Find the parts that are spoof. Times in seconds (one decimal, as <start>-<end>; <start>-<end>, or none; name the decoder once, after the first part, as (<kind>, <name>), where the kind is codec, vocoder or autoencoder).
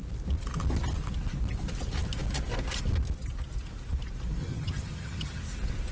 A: 4.4-5.4 (vocoder, HiFi-GAN)